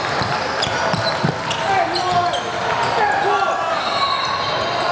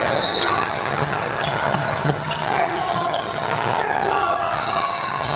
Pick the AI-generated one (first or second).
second